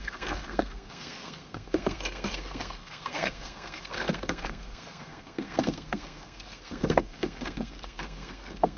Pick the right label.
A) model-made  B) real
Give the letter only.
A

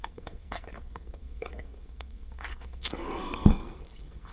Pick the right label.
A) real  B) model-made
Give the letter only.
B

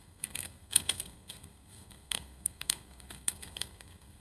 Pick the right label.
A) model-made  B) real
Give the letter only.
A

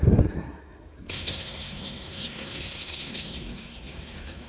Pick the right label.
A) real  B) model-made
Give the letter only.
B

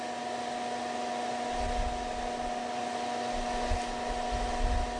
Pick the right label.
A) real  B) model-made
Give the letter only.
A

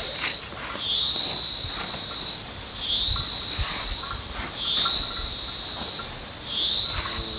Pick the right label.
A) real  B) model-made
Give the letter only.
A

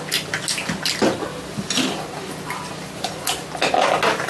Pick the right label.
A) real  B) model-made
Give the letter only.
A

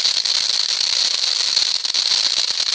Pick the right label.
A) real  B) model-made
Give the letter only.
A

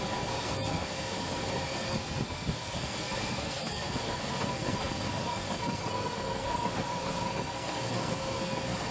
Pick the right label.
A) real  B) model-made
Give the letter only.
B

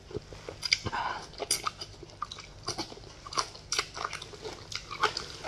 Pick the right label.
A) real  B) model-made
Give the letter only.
A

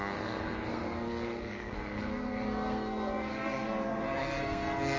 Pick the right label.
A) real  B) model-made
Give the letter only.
B